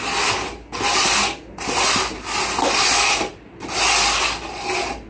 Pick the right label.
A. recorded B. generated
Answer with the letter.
A